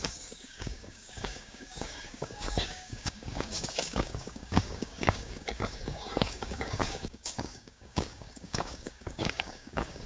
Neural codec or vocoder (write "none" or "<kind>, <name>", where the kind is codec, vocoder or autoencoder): codec, DAC